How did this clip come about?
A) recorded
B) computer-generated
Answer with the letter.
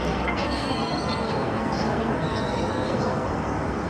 B